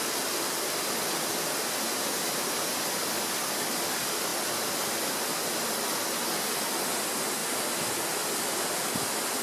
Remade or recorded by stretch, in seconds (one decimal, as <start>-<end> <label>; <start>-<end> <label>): 0.0-9.4 recorded